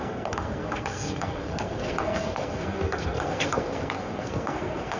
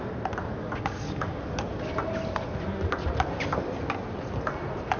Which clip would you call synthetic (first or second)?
first